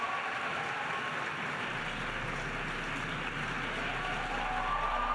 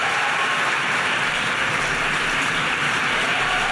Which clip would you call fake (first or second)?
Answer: second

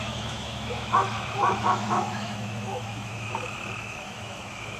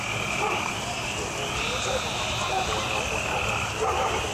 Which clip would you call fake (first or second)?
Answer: first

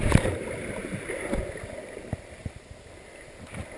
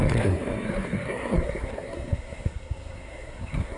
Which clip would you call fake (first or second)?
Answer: second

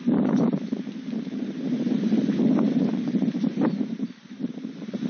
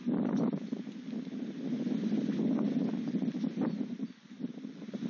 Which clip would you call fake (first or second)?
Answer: first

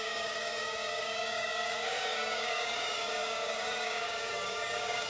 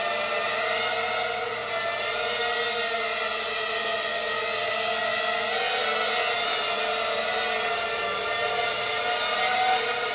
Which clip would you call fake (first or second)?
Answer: first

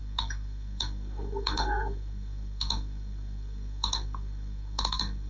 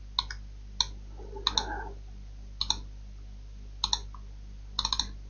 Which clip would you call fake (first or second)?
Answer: first